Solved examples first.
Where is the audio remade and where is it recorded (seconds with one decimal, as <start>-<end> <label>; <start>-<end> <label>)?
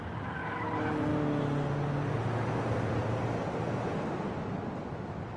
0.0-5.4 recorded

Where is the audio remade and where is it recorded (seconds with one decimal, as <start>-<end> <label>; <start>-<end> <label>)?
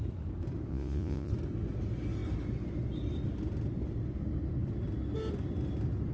0.0-0.7 recorded; 0.7-1.3 remade; 1.3-6.1 recorded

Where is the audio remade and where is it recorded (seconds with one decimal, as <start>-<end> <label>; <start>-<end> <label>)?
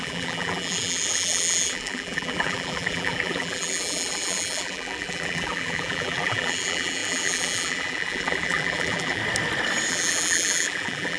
0.0-9.2 remade; 9.2-9.9 recorded; 9.9-11.2 remade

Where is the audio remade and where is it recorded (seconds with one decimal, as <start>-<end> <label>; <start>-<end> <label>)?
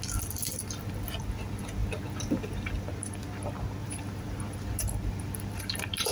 0.0-3.8 recorded; 3.8-5.6 remade; 5.6-6.1 recorded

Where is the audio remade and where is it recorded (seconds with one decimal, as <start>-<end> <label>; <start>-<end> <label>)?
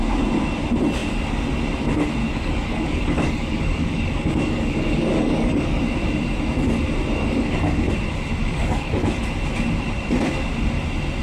0.0-2.2 recorded; 2.2-5.8 remade; 5.8-7.2 recorded; 7.2-7.9 remade; 7.9-8.4 recorded; 8.4-9.2 remade; 9.2-11.2 recorded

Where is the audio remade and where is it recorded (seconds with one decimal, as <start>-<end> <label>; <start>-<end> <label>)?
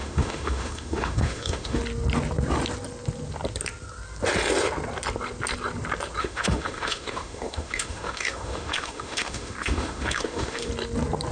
0.0-1.8 remade; 1.8-6.2 recorded; 6.2-10.7 remade; 10.7-11.3 recorded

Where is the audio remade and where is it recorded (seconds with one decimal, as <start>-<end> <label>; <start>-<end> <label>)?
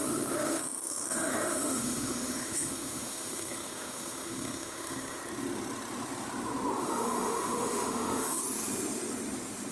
0.0-5.2 remade; 5.2-6.8 recorded; 6.8-8.4 remade; 8.4-9.7 recorded